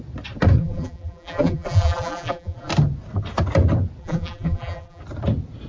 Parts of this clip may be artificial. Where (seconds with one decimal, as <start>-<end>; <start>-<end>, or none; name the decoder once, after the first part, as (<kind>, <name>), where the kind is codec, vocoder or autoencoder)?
0.6-2.7 (vocoder, BigVGAN v2); 4.0-5.0